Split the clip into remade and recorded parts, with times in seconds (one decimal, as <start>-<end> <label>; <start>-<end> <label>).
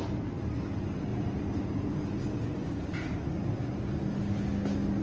0.0-5.0 recorded